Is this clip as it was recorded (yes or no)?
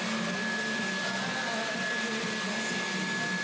yes